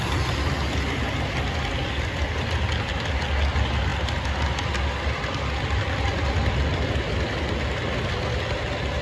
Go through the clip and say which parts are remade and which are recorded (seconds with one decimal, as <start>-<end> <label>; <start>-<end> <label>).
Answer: 0.0-9.0 recorded